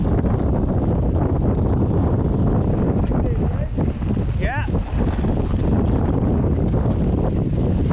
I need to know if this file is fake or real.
real